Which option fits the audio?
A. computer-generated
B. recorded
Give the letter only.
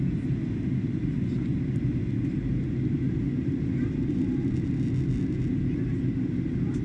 B